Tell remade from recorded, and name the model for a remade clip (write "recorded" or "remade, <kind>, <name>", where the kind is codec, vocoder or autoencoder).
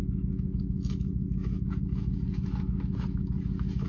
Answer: remade, autoencoder, DAC-VAE